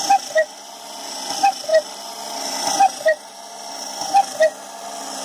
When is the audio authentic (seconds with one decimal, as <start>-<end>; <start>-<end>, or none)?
0.0-1.7; 4.8-5.2